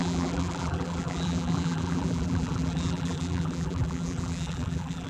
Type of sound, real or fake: fake